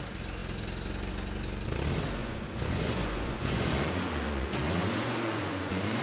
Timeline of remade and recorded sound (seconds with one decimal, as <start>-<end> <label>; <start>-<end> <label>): 0.0-2.2 recorded; 2.2-6.0 remade